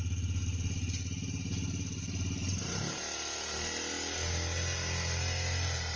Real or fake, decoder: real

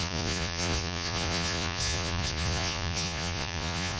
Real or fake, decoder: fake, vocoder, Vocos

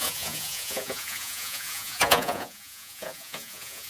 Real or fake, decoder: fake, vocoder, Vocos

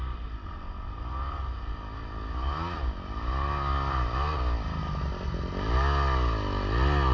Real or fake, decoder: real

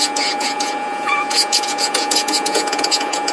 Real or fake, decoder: fake, vocoder, Vocos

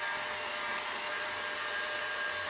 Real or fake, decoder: real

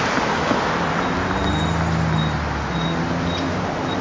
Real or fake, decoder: real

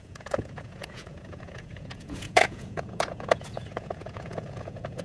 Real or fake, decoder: fake, vocoder, Vocos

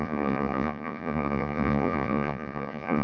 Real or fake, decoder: fake, vocoder, Vocos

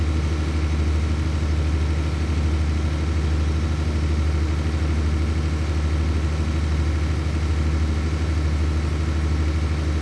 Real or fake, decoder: real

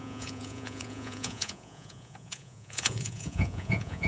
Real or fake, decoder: fake, vocoder, Vocos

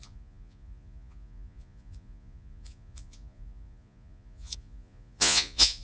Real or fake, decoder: fake, vocoder, Vocos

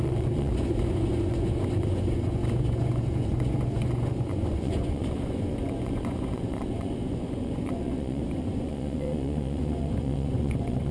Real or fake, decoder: fake, vocoder, Vocos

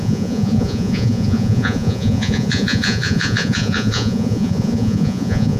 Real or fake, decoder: fake, vocoder, Vocos